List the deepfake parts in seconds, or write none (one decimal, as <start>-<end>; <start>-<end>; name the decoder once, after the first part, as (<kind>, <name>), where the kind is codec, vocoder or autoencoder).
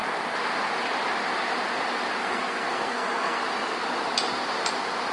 2.2-3.4 (codec, SNAC)